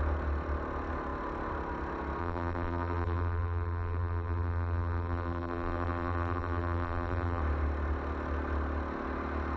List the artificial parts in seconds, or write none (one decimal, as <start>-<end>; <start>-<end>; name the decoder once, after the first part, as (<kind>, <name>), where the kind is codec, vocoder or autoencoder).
2.2-7.4 (vocoder, BigVGAN v2)